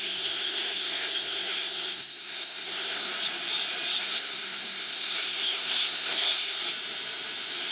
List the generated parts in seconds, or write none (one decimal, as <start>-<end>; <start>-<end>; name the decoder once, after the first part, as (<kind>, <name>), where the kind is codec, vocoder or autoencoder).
0.0-3.1 (codec, SNAC); 4.0-6.6